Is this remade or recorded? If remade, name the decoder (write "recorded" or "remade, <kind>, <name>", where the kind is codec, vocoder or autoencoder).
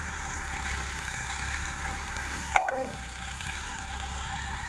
remade, codec, SNAC